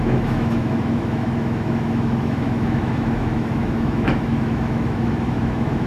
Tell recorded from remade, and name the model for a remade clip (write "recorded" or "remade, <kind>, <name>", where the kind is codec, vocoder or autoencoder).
remade, autoencoder, DAC-VAE